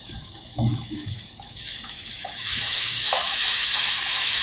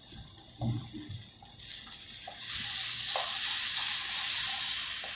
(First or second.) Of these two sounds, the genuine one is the second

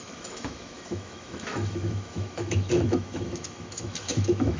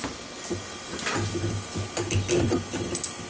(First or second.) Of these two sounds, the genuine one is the second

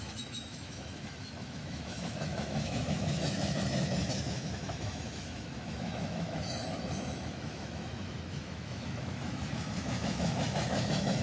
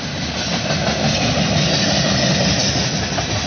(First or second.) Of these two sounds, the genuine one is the second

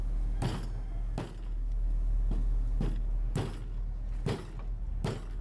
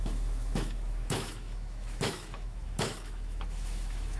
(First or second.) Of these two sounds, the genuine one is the first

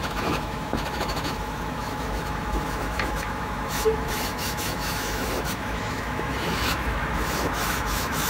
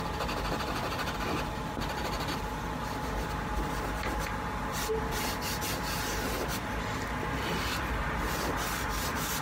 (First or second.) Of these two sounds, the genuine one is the second